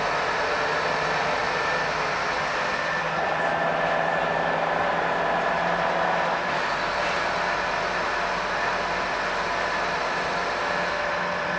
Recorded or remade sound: recorded